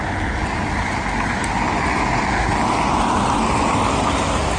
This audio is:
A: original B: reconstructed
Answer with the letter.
A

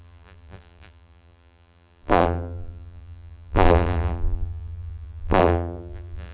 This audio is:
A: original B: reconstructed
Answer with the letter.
B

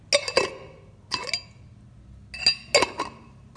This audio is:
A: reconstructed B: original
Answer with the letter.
B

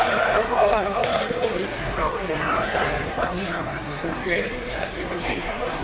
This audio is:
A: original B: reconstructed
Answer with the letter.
B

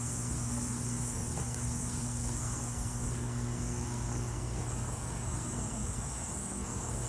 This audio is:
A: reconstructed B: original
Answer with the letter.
A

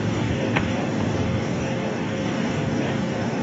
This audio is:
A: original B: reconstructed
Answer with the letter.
B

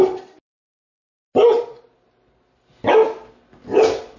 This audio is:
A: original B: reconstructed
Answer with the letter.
A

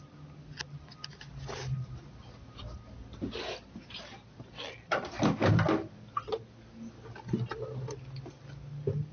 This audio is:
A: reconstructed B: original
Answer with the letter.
B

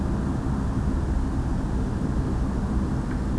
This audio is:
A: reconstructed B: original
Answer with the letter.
B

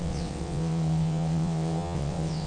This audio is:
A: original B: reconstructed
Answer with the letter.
B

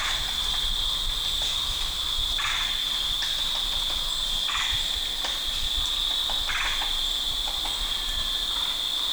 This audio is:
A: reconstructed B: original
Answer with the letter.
B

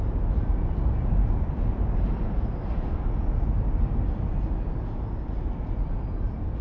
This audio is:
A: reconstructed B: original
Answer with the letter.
B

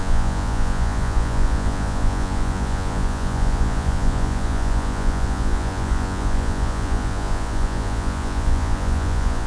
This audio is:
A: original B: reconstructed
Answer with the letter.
B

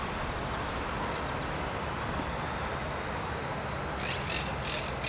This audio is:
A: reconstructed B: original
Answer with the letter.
B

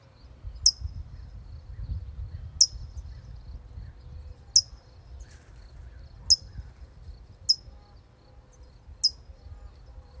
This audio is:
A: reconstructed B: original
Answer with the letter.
B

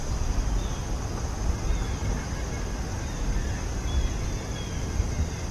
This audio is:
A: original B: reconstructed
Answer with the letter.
A